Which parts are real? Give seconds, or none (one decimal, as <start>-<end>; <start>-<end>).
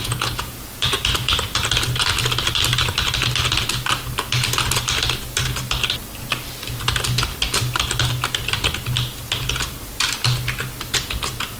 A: 1.0-11.6